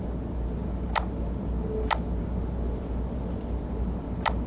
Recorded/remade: recorded